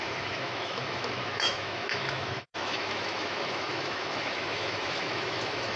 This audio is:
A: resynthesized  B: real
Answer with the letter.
A